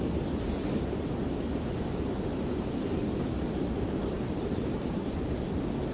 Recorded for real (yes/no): yes